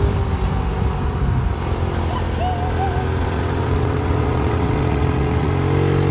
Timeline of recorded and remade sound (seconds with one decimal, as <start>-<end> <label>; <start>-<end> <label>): 0.0-3.2 recorded; 3.2-5.5 remade; 5.5-6.1 recorded